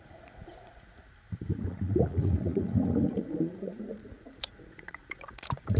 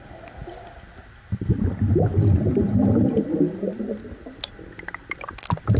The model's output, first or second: first